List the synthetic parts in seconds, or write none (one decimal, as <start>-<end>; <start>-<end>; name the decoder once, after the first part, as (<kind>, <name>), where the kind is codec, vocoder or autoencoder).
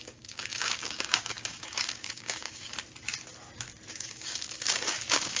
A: 0.0-2.7 (codec, DAC); 3.9-5.4